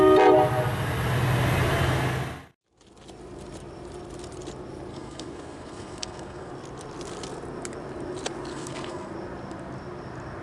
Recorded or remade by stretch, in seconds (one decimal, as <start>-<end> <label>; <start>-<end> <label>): 0.0-4.9 recorded; 4.9-6.5 remade; 6.5-8.5 recorded; 8.5-9.1 remade; 9.1-10.4 recorded